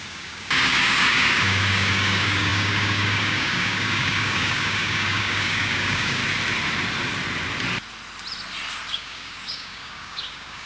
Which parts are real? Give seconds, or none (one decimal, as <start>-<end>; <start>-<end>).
6.2-8.9